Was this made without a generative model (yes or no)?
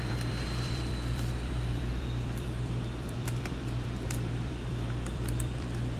no